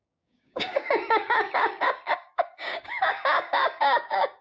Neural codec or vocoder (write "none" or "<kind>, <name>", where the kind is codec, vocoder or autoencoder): codec, DAC